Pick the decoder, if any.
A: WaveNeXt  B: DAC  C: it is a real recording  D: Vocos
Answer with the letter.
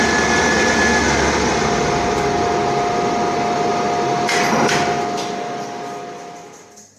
C